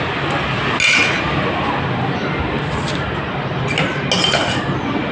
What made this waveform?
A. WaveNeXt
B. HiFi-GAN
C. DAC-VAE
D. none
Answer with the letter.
D